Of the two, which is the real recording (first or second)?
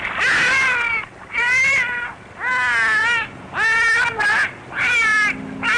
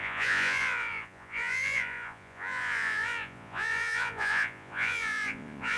first